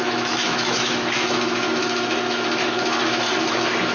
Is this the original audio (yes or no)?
no